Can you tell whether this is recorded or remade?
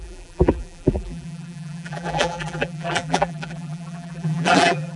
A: remade